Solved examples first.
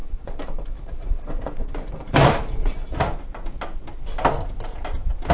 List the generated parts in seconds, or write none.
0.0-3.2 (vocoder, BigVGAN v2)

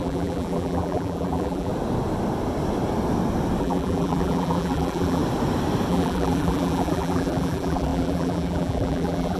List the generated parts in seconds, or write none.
0.0-1.7 (vocoder, BigVGAN v2); 3.6-5.2; 5.9-9.4

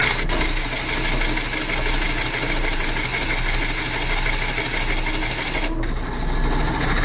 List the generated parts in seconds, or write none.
2.5-3.1 (vocoder, BigVGAN v2)

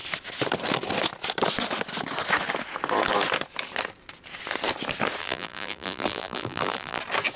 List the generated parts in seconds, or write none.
5.2-7.0 (vocoder, BigVGAN v2)

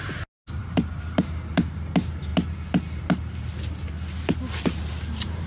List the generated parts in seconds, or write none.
0.6-1.2 (vocoder, BigVGAN v2)

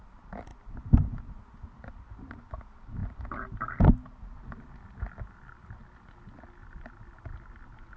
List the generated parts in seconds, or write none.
0.5-1.3 (vocoder, BigVGAN v2); 6.6-7.3

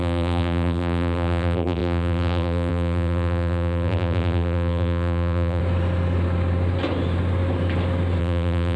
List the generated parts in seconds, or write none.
0.0-5.6 (vocoder, BigVGAN v2); 8.2-8.8